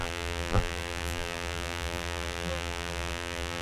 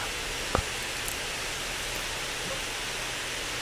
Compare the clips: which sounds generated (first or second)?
first